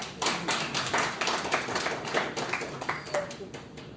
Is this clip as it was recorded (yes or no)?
no